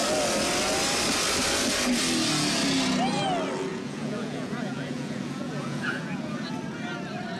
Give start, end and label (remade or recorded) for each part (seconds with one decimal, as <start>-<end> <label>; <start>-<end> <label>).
0.0-3.7 recorded; 3.7-6.5 remade; 6.5-7.4 recorded